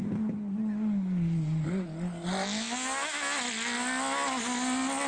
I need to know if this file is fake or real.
real